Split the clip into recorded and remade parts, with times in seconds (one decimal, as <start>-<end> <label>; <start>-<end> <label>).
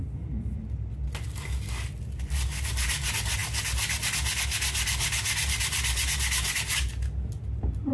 0.0-7.9 recorded